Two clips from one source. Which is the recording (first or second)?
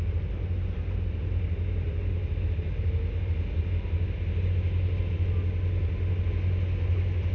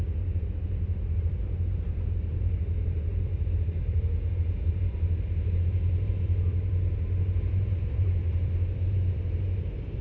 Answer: first